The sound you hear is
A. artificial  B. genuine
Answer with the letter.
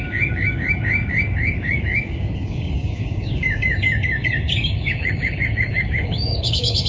A